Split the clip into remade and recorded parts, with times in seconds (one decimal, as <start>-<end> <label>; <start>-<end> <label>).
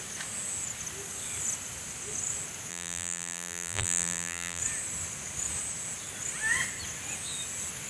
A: 0.0-2.7 recorded; 2.7-4.6 remade; 4.6-7.9 recorded